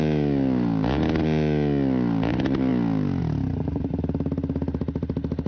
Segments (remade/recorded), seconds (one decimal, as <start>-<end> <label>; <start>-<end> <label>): 0.0-5.5 recorded